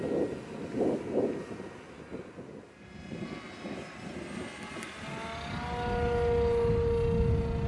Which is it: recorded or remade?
recorded